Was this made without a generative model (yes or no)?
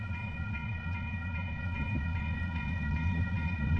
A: no